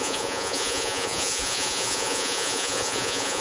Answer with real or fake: fake